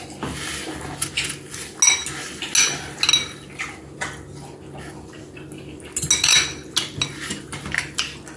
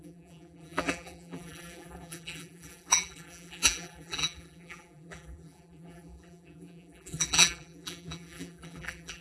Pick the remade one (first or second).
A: second